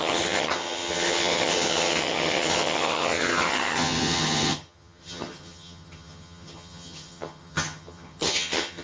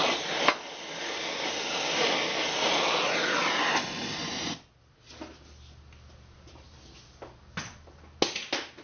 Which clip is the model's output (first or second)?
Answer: first